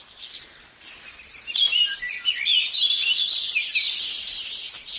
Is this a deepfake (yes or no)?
no